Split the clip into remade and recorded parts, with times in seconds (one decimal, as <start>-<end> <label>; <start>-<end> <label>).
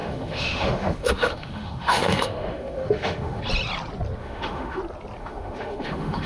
0.0-3.4 remade; 3.4-4.2 recorded; 4.2-4.8 remade; 4.8-5.2 recorded; 5.2-6.3 remade